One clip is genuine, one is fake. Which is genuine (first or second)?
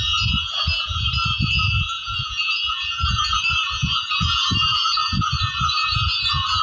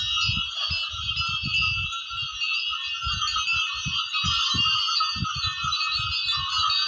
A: second